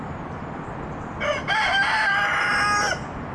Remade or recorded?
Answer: recorded